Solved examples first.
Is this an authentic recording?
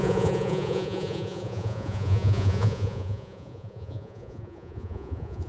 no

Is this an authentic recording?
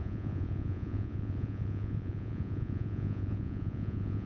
no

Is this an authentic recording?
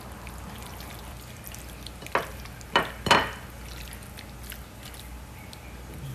yes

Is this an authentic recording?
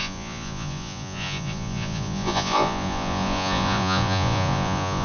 no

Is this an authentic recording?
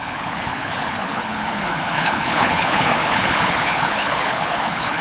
no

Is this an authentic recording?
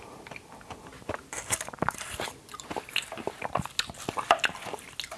yes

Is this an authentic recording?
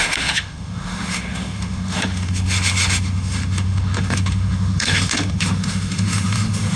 no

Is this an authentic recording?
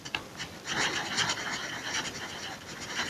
yes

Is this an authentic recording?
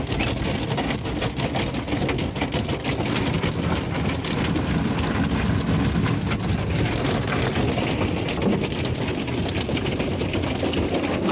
yes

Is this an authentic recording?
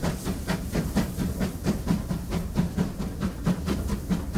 yes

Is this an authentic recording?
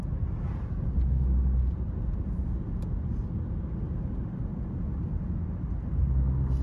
yes